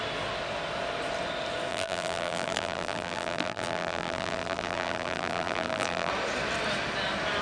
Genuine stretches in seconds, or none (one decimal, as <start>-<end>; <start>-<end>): 0.0-1.7; 6.1-7.4